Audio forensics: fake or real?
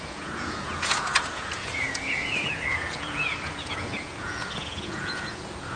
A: fake